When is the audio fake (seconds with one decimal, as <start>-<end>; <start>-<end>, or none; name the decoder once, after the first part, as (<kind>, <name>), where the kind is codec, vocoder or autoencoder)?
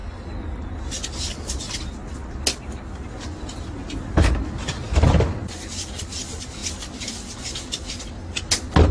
none